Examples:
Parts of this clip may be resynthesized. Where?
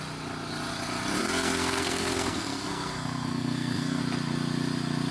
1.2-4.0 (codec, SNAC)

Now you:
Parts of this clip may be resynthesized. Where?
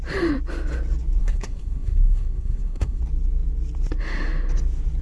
1.2-3.0 (codec, SNAC)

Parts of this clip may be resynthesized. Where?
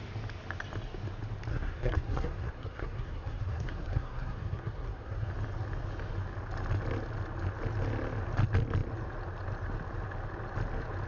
1.5-5.3 (codec, SNAC)